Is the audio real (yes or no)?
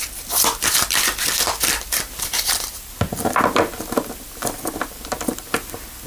no